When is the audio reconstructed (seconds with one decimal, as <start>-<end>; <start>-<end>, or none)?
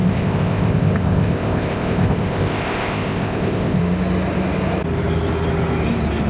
0.0-3.8